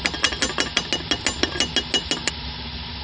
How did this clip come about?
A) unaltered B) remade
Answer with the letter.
A